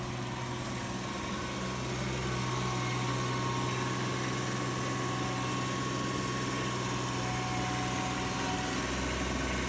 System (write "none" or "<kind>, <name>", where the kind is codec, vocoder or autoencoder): none